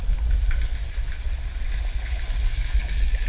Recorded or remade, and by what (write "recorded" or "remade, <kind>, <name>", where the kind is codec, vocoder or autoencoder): recorded